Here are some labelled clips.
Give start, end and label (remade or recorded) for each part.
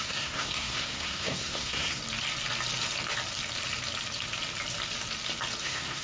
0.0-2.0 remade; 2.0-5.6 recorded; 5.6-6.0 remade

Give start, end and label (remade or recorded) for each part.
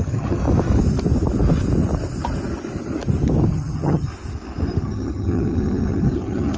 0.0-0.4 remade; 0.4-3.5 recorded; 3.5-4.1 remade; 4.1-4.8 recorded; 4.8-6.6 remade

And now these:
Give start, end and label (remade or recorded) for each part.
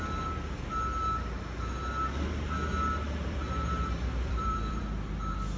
0.0-3.2 recorded; 3.2-4.8 remade; 4.8-5.6 recorded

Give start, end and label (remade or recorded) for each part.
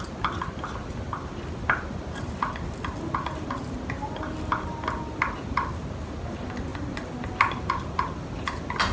0.0-6.7 recorded; 6.7-7.3 remade; 7.3-8.9 recorded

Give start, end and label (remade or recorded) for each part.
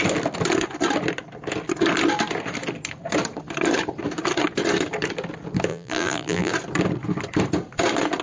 0.0-5.7 recorded; 5.7-6.5 remade; 6.5-8.2 recorded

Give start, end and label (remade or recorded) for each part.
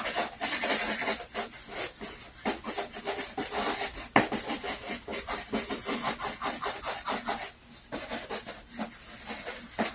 0.0-9.9 recorded